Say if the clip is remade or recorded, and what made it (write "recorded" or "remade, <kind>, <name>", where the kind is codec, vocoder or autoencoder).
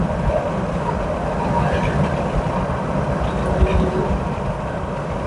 recorded